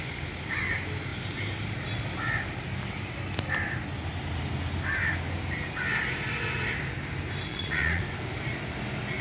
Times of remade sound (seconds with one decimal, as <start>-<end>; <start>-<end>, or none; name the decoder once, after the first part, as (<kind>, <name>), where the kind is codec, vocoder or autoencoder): 7.5-8.0 (vocoder, Vocos)